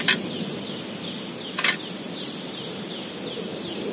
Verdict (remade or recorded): recorded